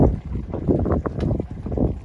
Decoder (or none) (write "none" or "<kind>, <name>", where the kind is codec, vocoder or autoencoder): none